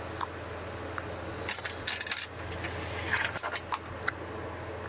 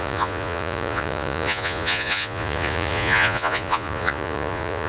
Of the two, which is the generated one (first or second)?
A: second